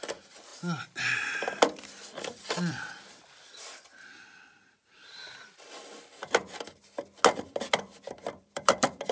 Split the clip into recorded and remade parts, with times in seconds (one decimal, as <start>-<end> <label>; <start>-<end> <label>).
0.0-0.5 remade; 0.5-2.2 recorded; 2.2-5.0 remade; 5.0-7.4 recorded; 7.4-9.1 remade